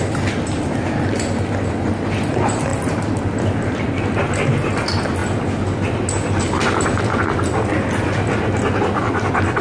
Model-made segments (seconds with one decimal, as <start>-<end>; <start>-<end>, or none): 2.7-4.0